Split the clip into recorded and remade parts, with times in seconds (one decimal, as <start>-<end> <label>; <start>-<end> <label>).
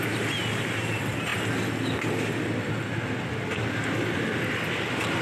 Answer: 0.0-5.2 recorded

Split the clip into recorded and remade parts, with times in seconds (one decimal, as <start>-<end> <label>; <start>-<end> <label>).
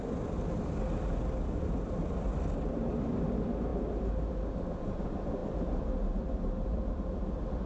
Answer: 0.0-7.7 recorded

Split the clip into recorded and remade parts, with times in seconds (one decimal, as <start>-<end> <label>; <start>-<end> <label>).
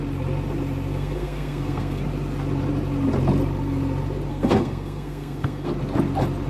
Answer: 0.0-0.9 recorded; 0.9-2.0 remade; 2.0-4.3 recorded; 4.3-5.7 remade; 5.7-6.5 recorded